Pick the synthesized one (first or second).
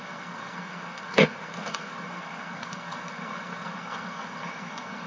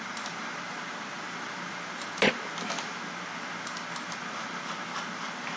first